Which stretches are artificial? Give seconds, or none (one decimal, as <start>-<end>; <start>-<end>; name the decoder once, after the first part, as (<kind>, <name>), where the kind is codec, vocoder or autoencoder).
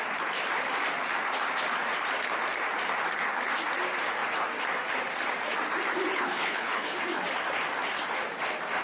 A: 6.1-7.0 (codec, HILCodec)